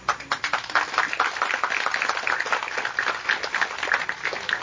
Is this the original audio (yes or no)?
yes